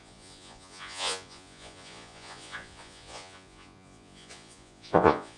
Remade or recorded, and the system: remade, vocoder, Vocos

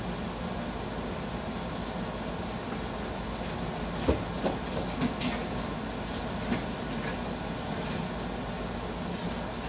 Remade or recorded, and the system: recorded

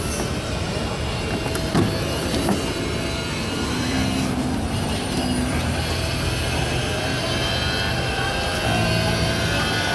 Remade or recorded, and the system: recorded